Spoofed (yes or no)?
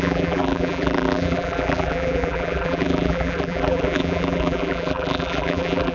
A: yes